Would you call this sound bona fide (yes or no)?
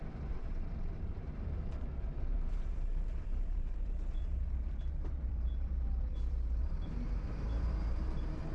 no